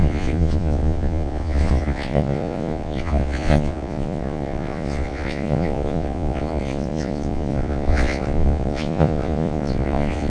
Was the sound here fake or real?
fake